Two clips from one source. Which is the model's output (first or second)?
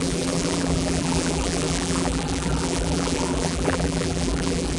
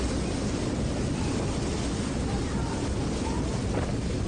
first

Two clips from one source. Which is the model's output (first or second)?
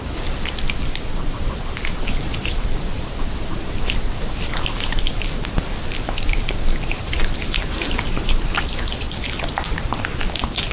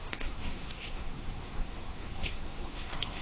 second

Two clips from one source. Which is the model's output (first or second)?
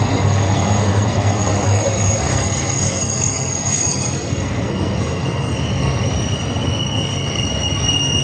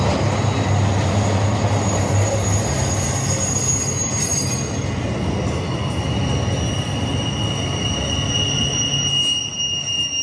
first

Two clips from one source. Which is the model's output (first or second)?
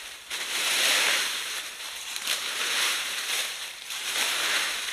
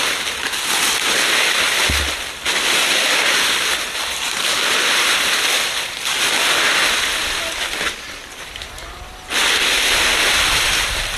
first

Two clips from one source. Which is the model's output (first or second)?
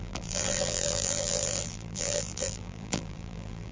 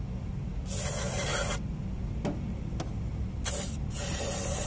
first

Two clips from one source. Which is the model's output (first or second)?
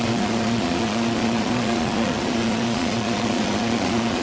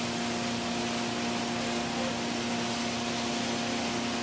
first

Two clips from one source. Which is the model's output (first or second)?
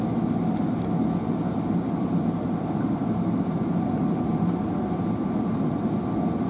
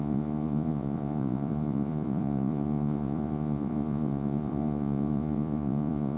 second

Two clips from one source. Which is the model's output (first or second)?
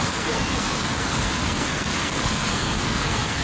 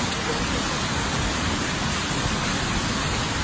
first